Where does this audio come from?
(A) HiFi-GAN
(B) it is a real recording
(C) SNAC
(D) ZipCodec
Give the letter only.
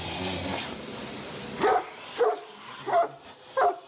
B